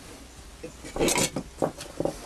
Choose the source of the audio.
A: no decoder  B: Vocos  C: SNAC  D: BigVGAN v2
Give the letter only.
A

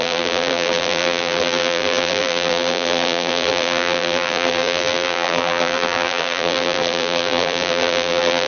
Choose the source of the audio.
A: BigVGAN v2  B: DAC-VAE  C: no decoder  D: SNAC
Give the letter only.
A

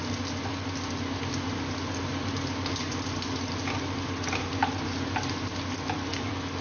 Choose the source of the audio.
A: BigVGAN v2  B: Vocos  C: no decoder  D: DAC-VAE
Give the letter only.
C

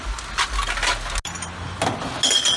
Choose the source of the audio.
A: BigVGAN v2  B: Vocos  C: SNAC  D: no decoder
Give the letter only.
D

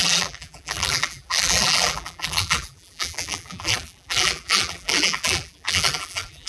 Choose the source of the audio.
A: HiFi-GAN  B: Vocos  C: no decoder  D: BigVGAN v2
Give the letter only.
D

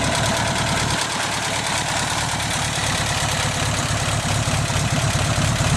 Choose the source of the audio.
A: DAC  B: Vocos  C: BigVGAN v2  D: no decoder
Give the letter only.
C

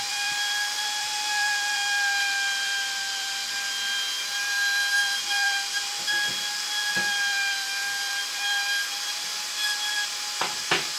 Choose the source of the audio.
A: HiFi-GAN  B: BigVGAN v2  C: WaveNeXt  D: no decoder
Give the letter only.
B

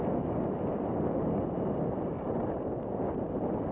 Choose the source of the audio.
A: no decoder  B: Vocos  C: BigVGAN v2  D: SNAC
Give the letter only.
A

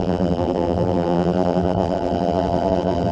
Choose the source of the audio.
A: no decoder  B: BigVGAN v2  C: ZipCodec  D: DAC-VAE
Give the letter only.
B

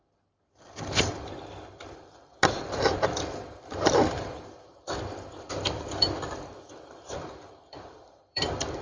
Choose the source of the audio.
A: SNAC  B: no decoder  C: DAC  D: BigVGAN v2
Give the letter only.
D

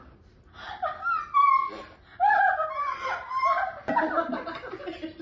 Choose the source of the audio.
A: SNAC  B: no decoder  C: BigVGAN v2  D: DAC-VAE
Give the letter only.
B